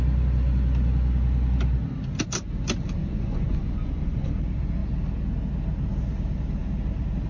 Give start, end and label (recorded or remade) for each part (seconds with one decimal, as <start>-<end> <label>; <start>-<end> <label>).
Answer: 0.0-3.0 recorded; 3.0-4.3 remade; 4.3-7.3 recorded